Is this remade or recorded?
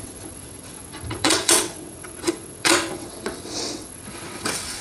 remade